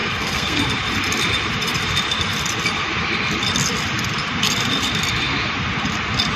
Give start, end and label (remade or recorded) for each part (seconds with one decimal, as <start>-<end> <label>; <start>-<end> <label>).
0.0-0.6 remade; 0.6-6.4 recorded